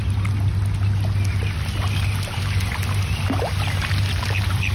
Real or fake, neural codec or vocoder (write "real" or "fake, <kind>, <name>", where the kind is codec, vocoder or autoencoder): real